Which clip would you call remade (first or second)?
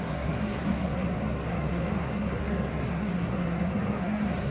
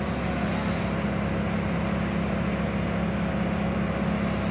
first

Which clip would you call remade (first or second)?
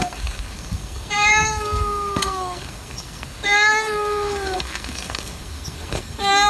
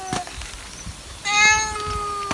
first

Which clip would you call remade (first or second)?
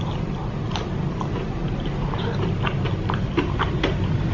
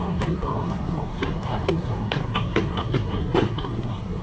second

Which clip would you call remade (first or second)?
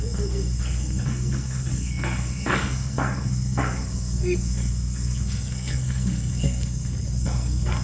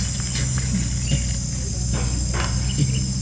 first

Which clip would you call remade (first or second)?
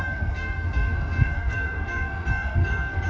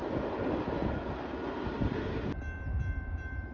first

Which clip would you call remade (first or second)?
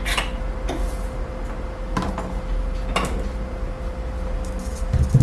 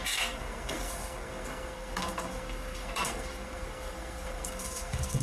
second